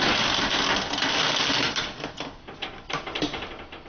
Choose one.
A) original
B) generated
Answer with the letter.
A